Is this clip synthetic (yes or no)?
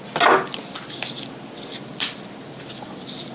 no